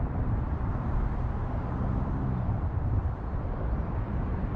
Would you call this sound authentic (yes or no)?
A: no